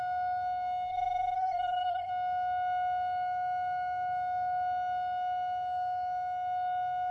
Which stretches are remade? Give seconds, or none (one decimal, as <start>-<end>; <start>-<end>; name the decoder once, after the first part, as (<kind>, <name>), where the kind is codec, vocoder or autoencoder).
0.9-2.1 (codec, SNAC)